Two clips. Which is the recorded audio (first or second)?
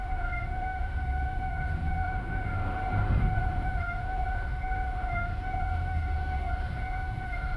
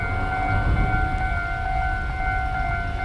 second